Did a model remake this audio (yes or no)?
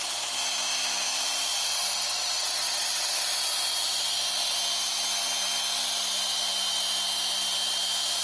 no